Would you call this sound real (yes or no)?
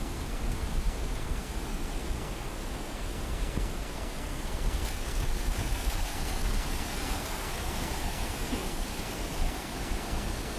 no